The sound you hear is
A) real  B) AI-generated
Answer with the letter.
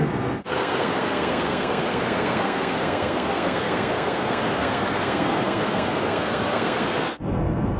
B